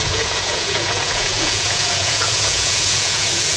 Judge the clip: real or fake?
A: fake